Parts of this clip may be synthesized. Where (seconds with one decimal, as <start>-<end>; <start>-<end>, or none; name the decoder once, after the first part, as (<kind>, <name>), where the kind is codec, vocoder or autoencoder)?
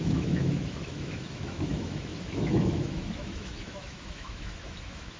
0.0-5.2 (autoencoder, DAC-VAE)